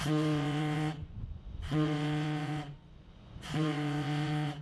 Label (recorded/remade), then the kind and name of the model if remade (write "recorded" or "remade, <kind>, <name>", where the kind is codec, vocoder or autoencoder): remade, vocoder, Vocos